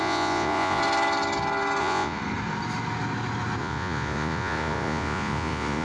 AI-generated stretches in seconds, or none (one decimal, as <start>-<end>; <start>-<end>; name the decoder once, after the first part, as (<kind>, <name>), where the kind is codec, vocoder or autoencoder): 0.0-0.8 (vocoder, Vocos); 1.8-2.2; 3.6-5.8